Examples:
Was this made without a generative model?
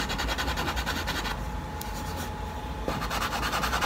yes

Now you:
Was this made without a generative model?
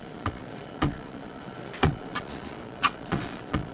no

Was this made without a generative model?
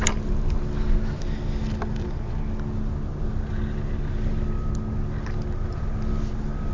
yes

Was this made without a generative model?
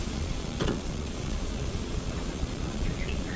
no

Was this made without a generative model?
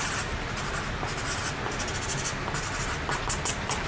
yes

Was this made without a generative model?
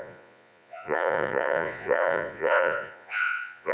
no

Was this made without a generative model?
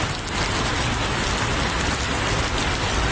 yes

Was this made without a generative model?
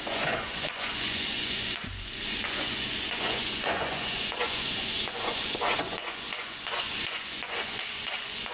no